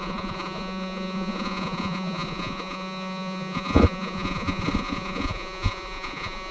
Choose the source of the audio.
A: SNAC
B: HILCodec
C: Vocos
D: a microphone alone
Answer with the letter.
C